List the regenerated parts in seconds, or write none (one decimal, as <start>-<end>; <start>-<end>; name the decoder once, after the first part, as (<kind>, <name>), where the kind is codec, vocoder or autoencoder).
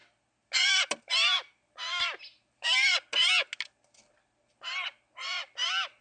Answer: none